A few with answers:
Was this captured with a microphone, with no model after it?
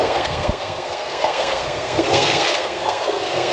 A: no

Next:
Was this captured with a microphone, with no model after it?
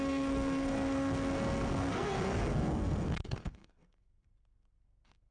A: no